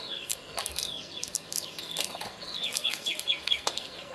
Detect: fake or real fake